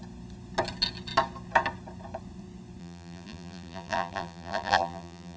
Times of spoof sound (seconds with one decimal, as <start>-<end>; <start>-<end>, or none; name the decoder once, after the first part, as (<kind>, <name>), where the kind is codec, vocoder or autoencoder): 2.8-5.4 (vocoder, BigVGAN v2)